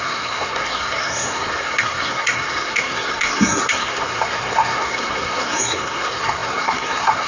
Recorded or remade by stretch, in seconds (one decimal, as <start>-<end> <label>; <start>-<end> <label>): 0.0-7.3 remade